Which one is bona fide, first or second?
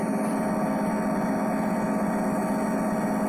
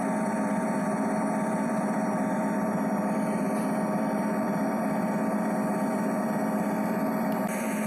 first